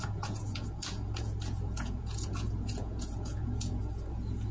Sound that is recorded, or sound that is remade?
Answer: remade